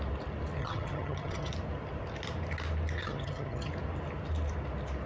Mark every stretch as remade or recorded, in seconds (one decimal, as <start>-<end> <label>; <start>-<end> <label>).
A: 0.0-0.6 recorded; 0.6-1.5 remade; 1.5-3.0 recorded; 3.0-3.7 remade; 3.7-5.1 recorded